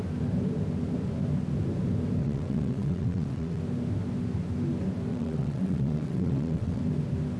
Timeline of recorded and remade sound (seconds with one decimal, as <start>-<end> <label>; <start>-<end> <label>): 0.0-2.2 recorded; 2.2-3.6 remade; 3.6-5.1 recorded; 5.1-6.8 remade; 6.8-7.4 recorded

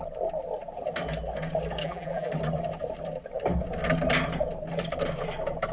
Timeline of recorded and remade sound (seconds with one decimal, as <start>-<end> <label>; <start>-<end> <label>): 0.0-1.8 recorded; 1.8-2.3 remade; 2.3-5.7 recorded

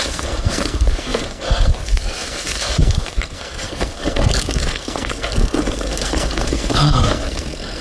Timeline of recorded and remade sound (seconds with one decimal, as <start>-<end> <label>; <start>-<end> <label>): 0.0-7.8 remade

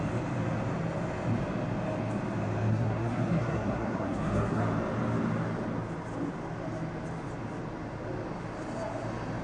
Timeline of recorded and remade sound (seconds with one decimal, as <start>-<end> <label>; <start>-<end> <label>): 0.0-2.7 recorded; 2.7-4.6 remade; 4.6-9.4 recorded

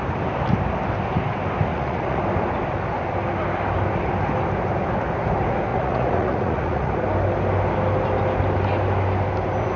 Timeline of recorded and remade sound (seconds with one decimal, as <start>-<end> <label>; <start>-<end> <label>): 0.0-1.7 recorded; 1.7-2.2 remade; 2.2-5.7 recorded; 5.7-6.9 remade; 6.9-9.8 recorded

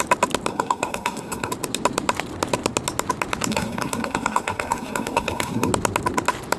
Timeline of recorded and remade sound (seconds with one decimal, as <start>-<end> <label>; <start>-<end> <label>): 0.0-0.5 recorded; 0.5-1.5 remade; 1.5-3.5 recorded; 3.5-5.7 remade; 5.7-6.6 recorded

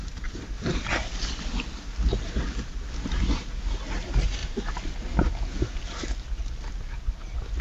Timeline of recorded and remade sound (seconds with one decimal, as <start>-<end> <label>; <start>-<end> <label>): 0.0-7.6 recorded